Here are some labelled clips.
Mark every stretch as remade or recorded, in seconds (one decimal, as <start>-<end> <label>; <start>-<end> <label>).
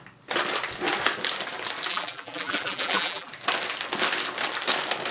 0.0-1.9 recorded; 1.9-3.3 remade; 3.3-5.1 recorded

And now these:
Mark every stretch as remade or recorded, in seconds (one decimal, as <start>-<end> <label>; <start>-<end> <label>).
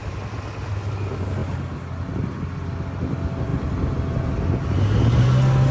0.0-0.7 remade; 0.7-3.5 recorded; 3.5-4.3 remade; 4.3-5.7 recorded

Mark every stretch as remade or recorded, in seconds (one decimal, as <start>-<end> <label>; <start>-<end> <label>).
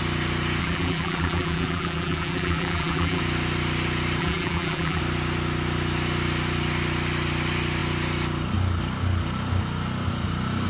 0.0-0.6 recorded; 0.6-3.2 remade; 3.2-4.2 recorded; 4.2-5.0 remade; 5.0-10.7 recorded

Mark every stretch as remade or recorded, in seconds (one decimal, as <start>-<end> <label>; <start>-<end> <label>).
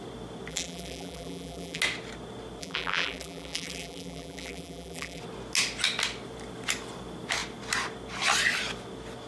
0.0-0.5 recorded; 0.5-1.8 remade; 1.8-2.6 recorded; 2.6-5.2 remade; 5.2-9.3 recorded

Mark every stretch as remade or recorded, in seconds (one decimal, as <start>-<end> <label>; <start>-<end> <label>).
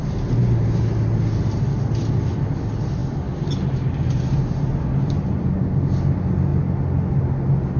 0.0-7.8 recorded